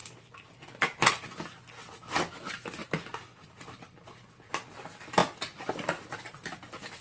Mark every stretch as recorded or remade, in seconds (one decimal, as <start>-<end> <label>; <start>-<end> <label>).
0.0-7.0 recorded